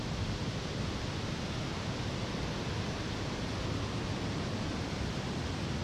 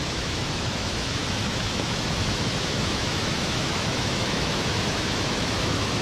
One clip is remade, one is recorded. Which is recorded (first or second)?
first